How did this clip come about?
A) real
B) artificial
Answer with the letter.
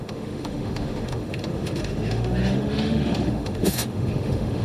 B